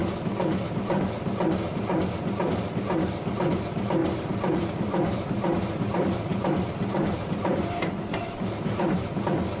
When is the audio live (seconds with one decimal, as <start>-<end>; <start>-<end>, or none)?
0.0-4.0; 9.2-9.6